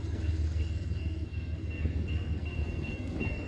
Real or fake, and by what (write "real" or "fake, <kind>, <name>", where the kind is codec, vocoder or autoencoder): fake, codec, SNAC